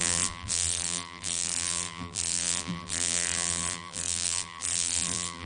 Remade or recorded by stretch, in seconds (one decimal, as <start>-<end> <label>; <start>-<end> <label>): 0.0-5.5 remade